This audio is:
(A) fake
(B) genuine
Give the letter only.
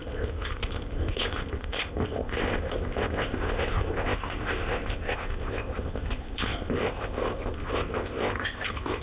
A